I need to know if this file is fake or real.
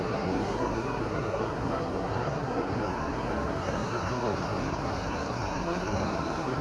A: fake